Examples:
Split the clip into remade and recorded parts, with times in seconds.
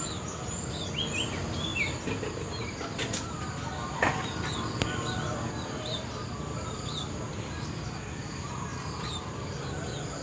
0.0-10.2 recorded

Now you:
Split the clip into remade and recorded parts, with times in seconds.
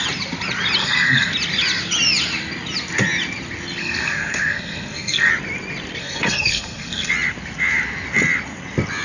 0.0-0.8 recorded; 0.8-1.3 remade; 1.3-3.8 recorded; 3.8-5.3 remade; 5.3-6.0 recorded; 6.0-7.1 remade; 7.1-9.0 recorded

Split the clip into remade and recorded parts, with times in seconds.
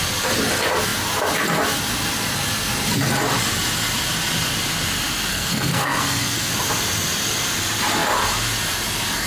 0.0-5.3 recorded; 5.3-6.5 remade; 6.5-9.3 recorded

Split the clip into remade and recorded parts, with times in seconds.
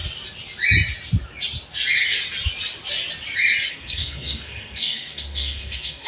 0.0-3.7 recorded; 3.7-6.1 remade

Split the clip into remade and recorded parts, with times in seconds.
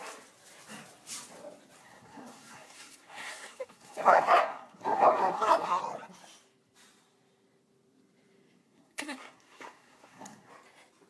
0.0-1.8 recorded; 1.8-5.8 remade; 5.8-8.6 recorded; 8.6-10.5 remade; 10.5-11.1 recorded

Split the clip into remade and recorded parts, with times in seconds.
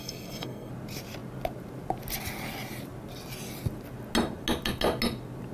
0.0-0.7 remade; 0.7-5.5 recorded